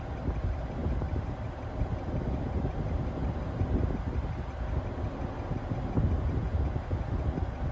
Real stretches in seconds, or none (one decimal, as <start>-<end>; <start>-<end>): 0.0-7.7

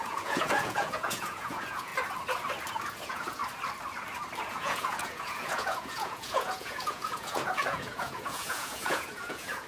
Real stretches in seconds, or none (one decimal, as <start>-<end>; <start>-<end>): 1.9-2.7; 3.4-4.5